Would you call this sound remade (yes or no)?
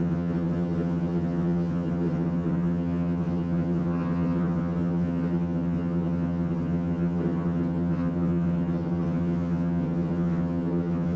yes